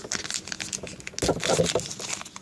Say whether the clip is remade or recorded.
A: recorded